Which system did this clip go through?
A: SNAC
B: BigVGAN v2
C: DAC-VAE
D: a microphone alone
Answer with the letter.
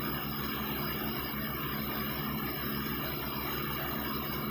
D